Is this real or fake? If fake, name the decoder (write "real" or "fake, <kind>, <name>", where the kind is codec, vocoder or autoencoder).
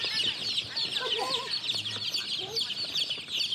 real